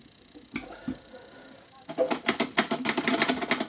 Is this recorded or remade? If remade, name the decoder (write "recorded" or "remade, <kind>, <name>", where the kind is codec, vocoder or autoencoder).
recorded